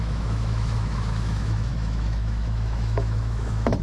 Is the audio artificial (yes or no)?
yes